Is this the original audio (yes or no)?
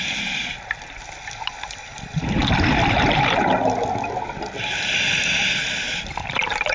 yes